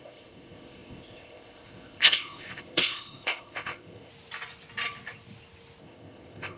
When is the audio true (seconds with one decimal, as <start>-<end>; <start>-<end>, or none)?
4.1-5.8